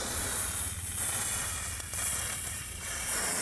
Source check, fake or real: fake